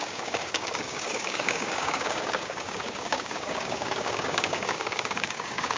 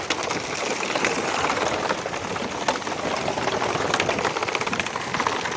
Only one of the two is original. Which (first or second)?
second